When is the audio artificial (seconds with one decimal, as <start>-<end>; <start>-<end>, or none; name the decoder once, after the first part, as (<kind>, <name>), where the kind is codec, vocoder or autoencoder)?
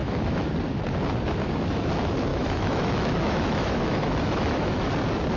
0.0-0.5 (autoencoder, DAC-VAE); 2.3-4.9